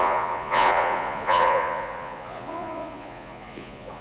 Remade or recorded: remade